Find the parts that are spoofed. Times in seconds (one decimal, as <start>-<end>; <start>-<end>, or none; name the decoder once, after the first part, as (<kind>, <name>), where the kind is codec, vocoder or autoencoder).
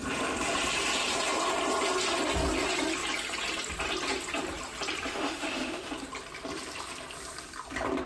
5.1-5.9 (autoencoder, DAC-VAE)